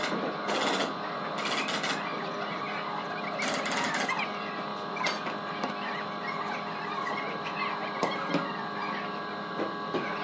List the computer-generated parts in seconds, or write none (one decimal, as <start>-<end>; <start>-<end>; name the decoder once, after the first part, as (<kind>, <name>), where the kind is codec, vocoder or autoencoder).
none